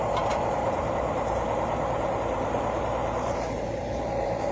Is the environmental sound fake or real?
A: fake